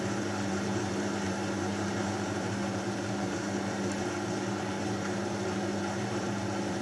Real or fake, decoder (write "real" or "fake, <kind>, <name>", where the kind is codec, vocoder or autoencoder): fake, vocoder, BigVGAN v2